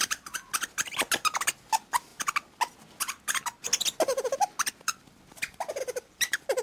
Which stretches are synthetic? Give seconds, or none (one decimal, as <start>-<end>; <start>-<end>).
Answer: 1.6-2.1; 5.8-6.6

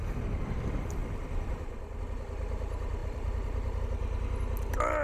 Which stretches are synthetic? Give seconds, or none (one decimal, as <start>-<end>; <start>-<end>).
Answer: 1.0-2.0; 3.0-3.8

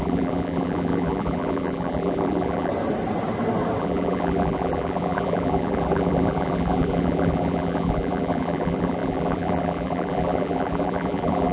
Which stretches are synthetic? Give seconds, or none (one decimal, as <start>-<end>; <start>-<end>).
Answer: 0.0-2.7; 3.8-11.5

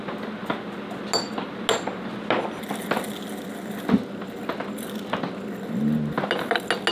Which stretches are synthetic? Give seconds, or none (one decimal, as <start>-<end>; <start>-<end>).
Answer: none